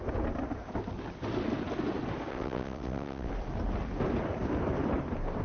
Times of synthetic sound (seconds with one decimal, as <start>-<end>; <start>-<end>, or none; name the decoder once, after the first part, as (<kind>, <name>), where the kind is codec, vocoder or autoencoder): 2.3-3.3 (vocoder, WaveNeXt)